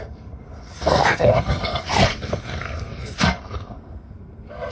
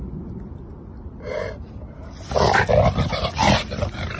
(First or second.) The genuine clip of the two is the second